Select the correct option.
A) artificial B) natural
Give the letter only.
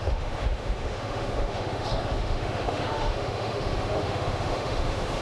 A